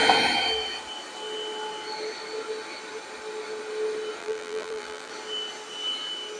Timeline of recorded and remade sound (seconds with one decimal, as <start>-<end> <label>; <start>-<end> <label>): 0.0-4.2 recorded; 4.2-5.1 remade; 5.1-6.4 recorded